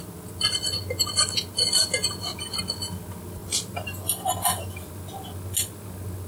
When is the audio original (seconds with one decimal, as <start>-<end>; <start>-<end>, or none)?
0.0-6.3